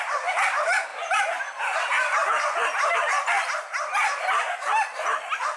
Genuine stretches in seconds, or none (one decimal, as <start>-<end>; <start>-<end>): 0.0-5.6